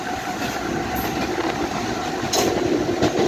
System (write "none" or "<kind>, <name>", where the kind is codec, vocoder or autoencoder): none